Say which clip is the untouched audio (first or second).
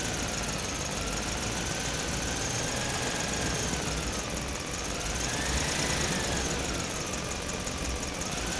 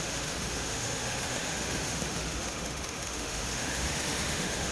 first